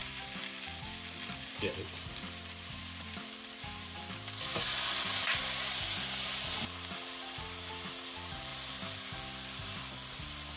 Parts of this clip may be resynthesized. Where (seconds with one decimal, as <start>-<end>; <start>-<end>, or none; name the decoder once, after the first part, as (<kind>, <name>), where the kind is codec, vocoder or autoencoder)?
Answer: 0.0-4.0 (vocoder, BigVGAN v2)